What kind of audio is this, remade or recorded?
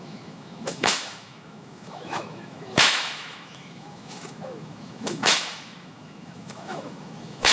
remade